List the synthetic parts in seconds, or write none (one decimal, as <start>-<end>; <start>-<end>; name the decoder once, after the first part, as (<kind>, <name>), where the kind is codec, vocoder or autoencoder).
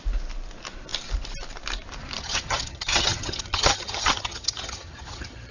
2.2-5.5 (vocoder, HiFi-GAN)